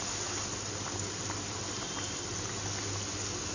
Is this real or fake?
real